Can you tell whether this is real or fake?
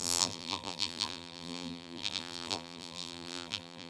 fake